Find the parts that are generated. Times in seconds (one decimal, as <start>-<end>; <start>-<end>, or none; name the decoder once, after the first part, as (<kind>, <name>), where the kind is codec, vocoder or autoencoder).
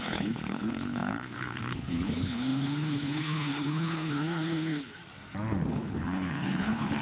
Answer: 0.0-5.0 (codec, HILCodec); 5.7-7.0